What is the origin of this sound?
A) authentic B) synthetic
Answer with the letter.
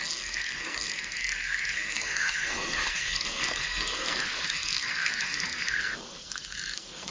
B